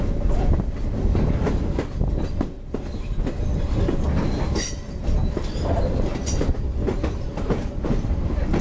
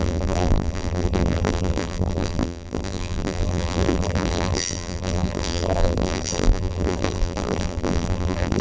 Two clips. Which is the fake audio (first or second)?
second